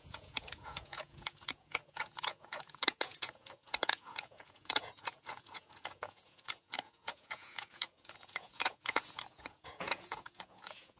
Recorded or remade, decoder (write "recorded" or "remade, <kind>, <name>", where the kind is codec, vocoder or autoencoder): remade, vocoder, Vocos